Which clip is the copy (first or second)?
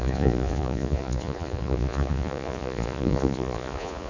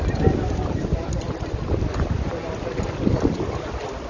first